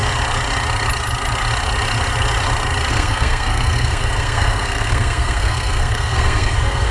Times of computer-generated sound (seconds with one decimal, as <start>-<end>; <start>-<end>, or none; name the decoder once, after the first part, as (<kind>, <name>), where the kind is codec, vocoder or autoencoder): 2.9-6.9 (codec, SNAC)